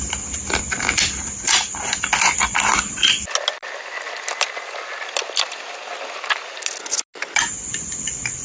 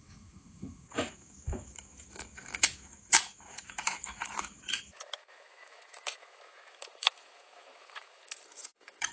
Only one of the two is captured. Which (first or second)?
first